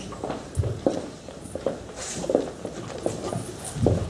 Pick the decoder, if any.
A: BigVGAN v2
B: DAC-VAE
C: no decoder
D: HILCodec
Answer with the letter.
C